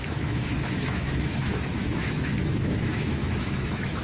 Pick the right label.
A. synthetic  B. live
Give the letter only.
A